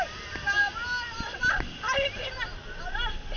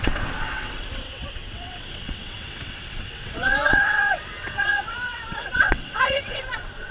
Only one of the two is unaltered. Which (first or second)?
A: first